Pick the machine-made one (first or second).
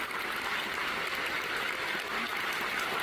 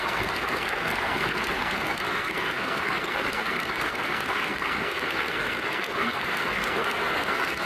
second